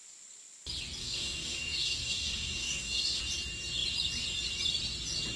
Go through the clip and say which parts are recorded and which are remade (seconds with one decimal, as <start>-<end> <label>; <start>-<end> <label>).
0.0-1.0 recorded; 1.0-3.2 remade; 3.2-5.4 recorded